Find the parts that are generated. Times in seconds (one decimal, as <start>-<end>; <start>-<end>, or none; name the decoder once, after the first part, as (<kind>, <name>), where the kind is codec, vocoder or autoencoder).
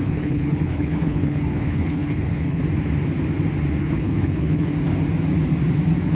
0.0-2.6 (codec, HILCodec); 3.8-4.7